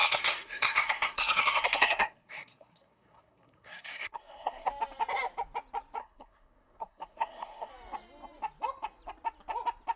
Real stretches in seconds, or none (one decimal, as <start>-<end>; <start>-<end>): 4.7-6.0; 7.7-10.0